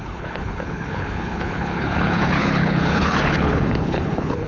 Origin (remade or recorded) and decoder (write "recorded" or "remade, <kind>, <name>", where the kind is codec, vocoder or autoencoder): remade, codec, HILCodec